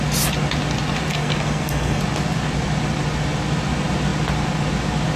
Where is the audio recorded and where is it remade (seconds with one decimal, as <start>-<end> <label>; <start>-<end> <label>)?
0.0-1.1 recorded; 1.1-2.0 remade; 2.0-5.2 recorded